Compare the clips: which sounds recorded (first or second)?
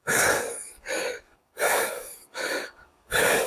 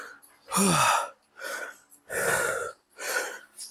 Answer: second